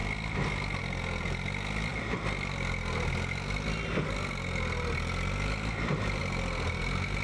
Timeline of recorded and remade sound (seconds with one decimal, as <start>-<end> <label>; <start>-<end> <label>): 0.0-0.8 recorded; 0.8-7.2 remade